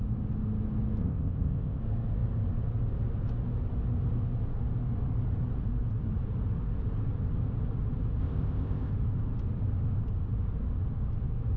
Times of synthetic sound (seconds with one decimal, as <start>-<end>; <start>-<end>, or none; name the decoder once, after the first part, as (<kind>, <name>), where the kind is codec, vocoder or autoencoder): 1.0-1.8 (codec, ZipCodec); 8.2-8.9